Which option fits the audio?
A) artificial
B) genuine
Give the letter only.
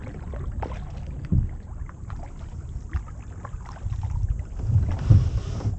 B